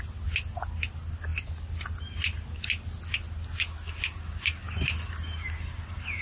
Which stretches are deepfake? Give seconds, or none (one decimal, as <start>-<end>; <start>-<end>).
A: none